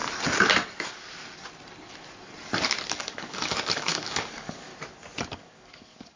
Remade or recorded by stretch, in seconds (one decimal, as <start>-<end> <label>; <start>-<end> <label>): 0.0-2.9 recorded; 2.9-4.7 remade; 4.7-5.3 recorded; 5.3-6.2 remade